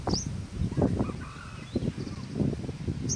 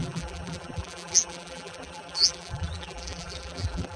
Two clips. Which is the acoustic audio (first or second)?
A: first